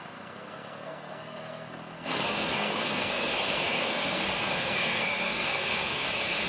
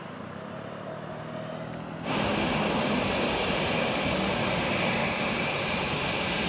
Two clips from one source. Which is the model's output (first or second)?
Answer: first